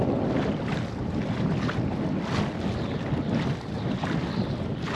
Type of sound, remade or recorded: recorded